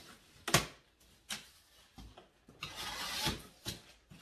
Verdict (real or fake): real